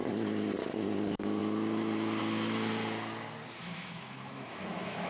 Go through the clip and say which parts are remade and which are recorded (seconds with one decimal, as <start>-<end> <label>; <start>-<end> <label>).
0.0-3.7 recorded; 3.7-5.1 remade